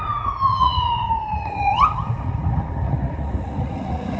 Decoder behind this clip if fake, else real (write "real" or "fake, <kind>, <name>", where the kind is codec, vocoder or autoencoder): fake, vocoder, Vocos